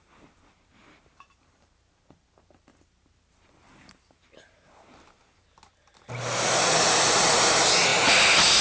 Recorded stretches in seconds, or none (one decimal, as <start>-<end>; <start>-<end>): 0.0-8.6